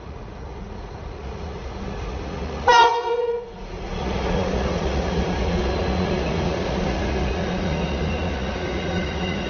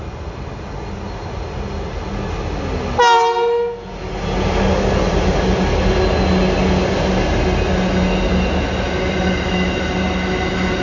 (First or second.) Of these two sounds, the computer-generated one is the first